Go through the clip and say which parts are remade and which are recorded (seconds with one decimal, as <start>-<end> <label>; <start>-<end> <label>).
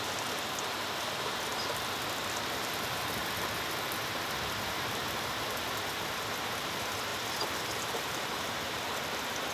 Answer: 0.0-9.5 recorded